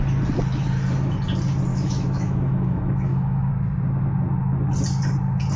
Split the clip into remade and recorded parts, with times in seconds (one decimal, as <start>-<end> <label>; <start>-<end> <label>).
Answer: 0.0-1.7 recorded; 1.7-3.5 remade; 3.5-5.6 recorded